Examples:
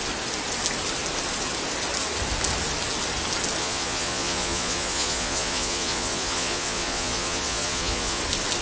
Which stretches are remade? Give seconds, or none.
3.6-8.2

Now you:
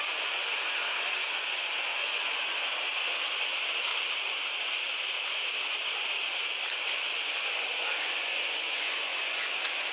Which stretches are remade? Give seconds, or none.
0.0-3.9; 6.9-9.9

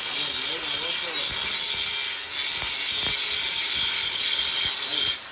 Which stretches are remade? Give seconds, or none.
none